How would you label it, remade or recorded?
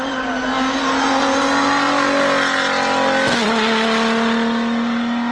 recorded